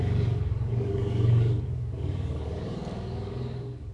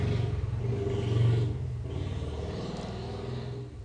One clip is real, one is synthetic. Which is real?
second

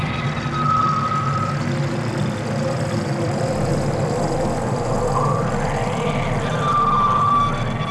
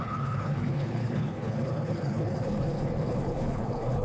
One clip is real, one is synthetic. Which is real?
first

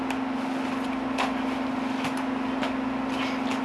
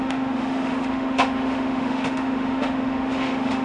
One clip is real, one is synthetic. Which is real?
first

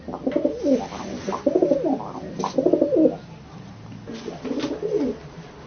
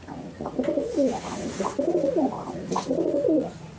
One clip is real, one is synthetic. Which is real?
first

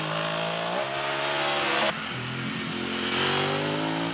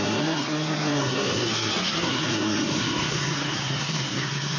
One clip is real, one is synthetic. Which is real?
first